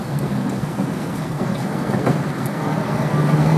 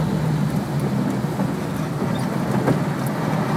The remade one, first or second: first